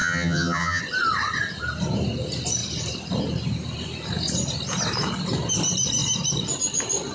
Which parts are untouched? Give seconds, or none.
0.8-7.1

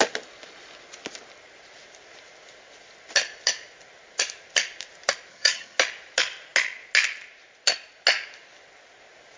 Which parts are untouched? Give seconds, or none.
0.0-5.3; 5.8-9.4

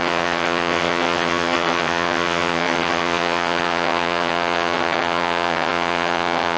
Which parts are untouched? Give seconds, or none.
none

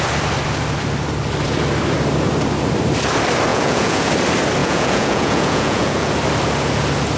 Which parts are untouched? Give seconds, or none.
0.0-3.5; 4.1-4.6; 6.1-7.2

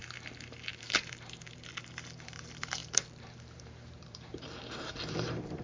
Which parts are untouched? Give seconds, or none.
0.0-0.7

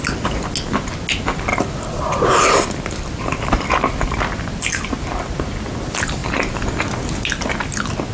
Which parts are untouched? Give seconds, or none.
0.0-1.5; 4.0-6.2; 6.8-8.1

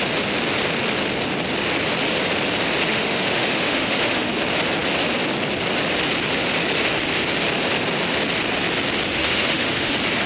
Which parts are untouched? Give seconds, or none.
0.0-2.9; 4.3-9.1; 9.9-10.3